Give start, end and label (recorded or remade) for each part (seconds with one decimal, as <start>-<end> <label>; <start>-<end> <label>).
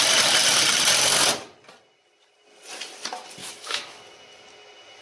0.0-3.4 recorded; 3.4-4.0 remade; 4.0-5.0 recorded